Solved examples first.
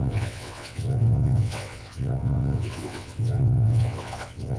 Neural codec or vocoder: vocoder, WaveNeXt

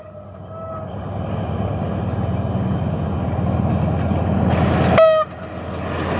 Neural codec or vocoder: none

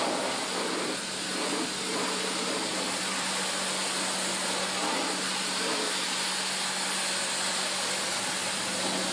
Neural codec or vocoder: none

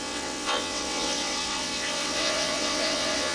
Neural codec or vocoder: vocoder, WaveNeXt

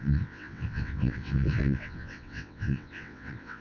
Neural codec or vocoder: vocoder, WaveNeXt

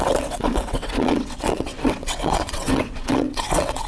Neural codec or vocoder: vocoder, WaveNeXt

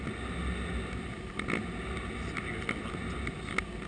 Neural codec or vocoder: none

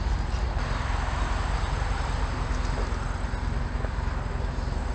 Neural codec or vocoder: none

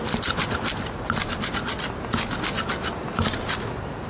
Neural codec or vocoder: none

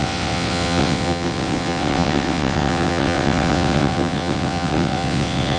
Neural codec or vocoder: vocoder, WaveNeXt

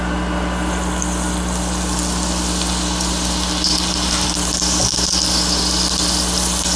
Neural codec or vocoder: none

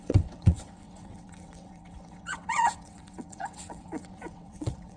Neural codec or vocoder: vocoder, WaveNeXt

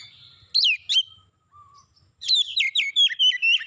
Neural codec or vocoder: none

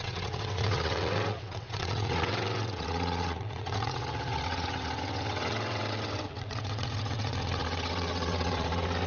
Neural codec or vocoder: vocoder, WaveNeXt